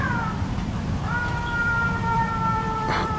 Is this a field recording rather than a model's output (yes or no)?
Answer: no